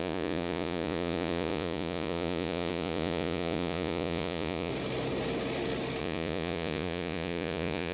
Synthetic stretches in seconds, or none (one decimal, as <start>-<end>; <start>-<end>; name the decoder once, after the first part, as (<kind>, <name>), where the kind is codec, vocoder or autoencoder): 0.0-4.7 (vocoder, Vocos); 6.0-7.9